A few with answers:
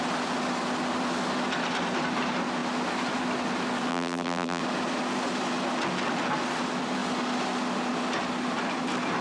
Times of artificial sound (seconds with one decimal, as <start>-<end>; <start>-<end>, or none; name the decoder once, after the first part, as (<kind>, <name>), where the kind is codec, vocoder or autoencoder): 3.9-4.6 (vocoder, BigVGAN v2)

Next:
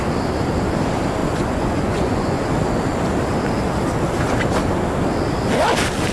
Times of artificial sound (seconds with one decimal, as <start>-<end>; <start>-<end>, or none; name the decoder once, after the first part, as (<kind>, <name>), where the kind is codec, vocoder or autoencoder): 1.2-2.4 (vocoder, Vocos)

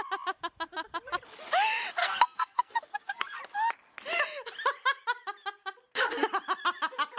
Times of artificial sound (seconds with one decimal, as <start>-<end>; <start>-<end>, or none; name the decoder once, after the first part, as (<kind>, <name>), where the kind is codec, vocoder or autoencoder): 2.0-3.4 (codec, SNAC)

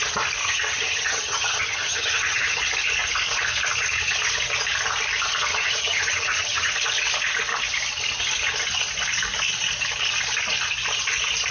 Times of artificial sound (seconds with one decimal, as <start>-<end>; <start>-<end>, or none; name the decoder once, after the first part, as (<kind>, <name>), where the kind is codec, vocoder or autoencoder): 0.4-2.6 (vocoder, HiFi-GAN); 5.5-6.7

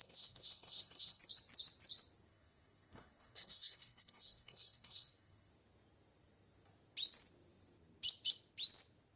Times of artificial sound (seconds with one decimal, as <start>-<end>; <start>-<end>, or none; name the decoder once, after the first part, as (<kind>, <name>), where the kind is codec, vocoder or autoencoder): 0.0-1.2 (codec, SNAC); 2.3-5.5